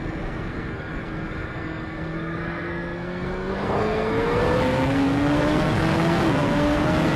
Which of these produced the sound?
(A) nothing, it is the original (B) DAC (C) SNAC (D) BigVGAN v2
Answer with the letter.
C